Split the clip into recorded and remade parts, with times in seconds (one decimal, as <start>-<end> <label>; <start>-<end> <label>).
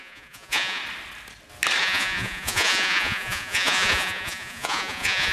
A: 0.0-0.8 remade; 0.8-1.8 recorded; 1.8-5.3 remade